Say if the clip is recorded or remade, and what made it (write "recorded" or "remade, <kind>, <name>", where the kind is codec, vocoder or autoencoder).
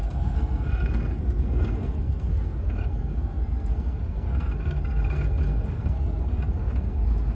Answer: remade, codec, SNAC